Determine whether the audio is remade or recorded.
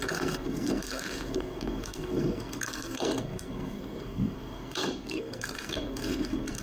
remade